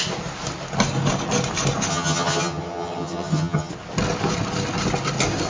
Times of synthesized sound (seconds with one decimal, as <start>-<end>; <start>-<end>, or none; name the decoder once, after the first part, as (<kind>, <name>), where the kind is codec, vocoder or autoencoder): 1.9-3.7 (vocoder, HiFi-GAN)